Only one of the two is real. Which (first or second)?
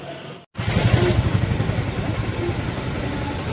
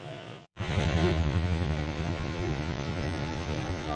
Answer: first